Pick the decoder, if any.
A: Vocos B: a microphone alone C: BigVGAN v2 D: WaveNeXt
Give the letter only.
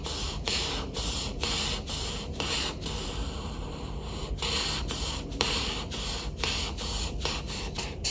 C